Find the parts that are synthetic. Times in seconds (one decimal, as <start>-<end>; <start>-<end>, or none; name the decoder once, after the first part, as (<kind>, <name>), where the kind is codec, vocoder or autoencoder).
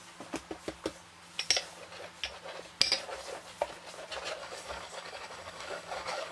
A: 4.4-6.3 (codec, DAC)